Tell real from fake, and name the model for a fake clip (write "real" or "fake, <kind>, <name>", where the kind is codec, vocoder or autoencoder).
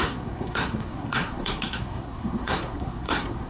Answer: fake, codec, SNAC